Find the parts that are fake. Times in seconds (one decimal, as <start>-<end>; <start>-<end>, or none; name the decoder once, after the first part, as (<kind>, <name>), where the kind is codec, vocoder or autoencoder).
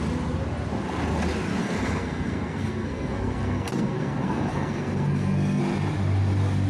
1.6-5.6 (codec, SNAC)